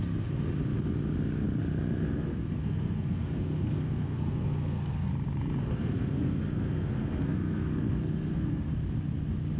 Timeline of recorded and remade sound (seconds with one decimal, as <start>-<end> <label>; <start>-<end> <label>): 0.0-2.0 recorded; 2.0-5.1 remade; 5.1-5.6 recorded; 5.6-8.7 remade; 8.7-9.6 recorded